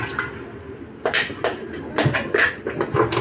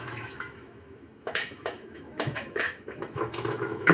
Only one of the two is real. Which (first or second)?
first